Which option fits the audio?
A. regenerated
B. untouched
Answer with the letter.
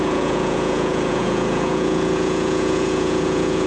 A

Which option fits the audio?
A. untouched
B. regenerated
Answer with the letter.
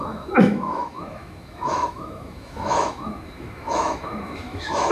B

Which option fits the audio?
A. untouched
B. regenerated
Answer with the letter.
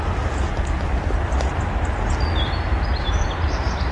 A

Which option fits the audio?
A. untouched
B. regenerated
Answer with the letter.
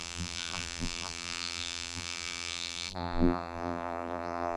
B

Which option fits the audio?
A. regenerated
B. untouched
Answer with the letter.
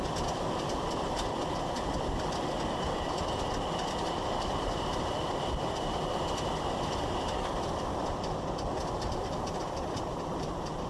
A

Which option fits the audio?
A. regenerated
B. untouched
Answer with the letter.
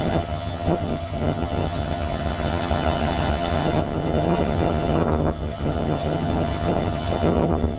A